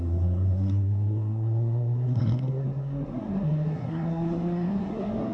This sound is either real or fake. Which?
fake